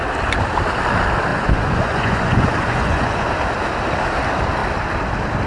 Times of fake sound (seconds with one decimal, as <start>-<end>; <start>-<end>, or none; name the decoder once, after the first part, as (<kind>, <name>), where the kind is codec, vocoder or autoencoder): 1.3-3.3 (vocoder, Vocos)